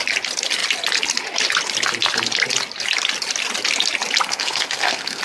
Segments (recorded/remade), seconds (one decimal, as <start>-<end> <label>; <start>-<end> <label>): 0.0-4.3 recorded; 4.3-5.2 remade

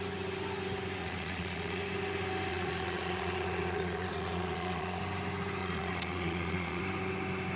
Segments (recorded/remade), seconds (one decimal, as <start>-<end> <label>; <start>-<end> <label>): 0.0-1.0 recorded; 1.0-1.8 remade; 1.8-2.5 recorded; 2.5-5.0 remade; 5.0-5.6 recorded; 5.6-6.8 remade; 6.8-7.6 recorded

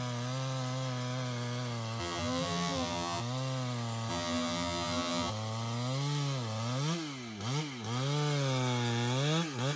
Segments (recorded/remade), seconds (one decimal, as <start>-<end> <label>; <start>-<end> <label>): 0.0-2.0 recorded; 2.0-3.2 remade; 3.2-4.1 recorded; 4.1-5.3 remade; 5.3-9.8 recorded

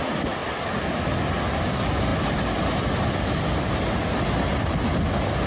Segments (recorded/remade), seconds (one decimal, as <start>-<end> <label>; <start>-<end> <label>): 0.0-5.5 recorded